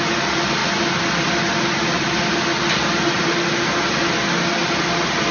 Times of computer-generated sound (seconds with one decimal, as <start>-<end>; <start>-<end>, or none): none